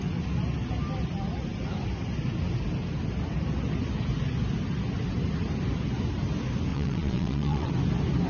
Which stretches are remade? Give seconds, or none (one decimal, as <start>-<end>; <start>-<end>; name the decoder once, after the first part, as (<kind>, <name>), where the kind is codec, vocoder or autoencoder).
6.7-7.7 (vocoder, WaveNeXt)